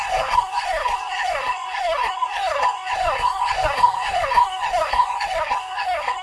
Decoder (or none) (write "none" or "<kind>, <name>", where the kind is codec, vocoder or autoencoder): codec, SNAC